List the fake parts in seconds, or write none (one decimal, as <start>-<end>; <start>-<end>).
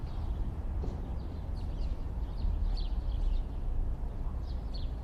0.0-0.6